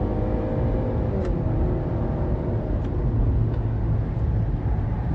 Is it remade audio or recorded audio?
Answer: recorded